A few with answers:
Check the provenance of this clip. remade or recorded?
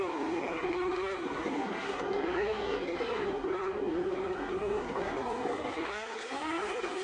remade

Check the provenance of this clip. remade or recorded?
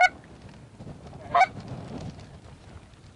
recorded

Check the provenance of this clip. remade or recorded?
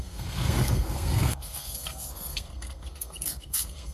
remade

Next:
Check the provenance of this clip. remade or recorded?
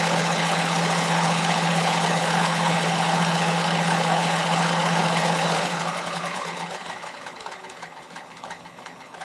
remade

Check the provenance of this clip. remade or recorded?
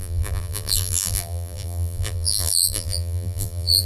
remade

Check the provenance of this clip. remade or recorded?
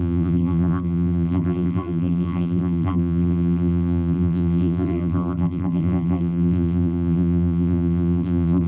remade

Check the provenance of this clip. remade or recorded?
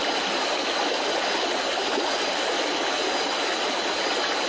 recorded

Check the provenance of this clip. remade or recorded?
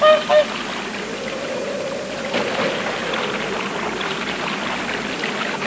recorded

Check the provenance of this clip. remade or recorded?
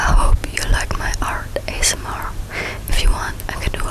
remade